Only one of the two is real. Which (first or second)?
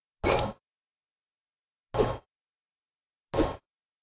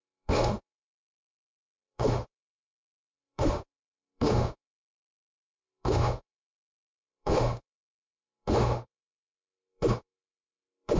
first